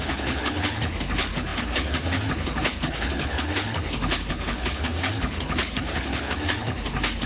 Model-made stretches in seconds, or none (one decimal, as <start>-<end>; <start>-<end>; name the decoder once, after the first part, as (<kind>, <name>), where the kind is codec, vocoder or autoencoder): 0.0-7.3 (codec, HILCodec)